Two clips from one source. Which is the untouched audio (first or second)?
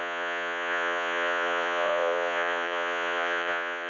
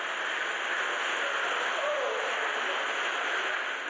second